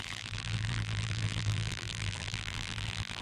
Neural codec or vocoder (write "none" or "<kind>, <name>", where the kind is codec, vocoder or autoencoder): vocoder, BigVGAN v2